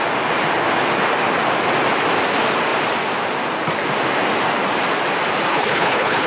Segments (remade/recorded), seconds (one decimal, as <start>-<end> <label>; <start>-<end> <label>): 0.0-5.5 recorded; 5.5-6.3 remade